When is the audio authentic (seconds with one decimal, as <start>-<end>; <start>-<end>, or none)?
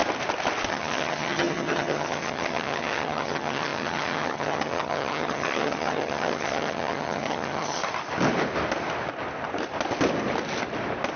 0.0-0.7; 7.8-11.2